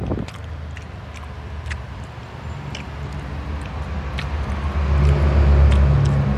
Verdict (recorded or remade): recorded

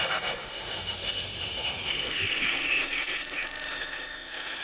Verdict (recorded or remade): remade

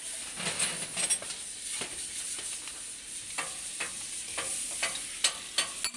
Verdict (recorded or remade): recorded